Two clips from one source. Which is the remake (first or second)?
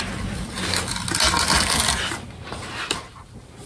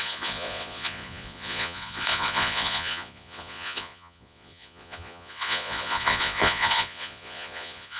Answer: second